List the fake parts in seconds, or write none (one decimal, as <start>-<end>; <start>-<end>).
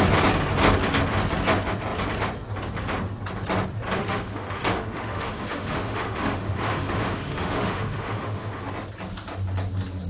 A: 4.0-8.6